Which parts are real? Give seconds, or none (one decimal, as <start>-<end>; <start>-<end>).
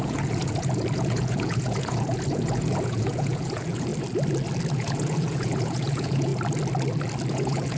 3.9-4.7; 6.3-7.3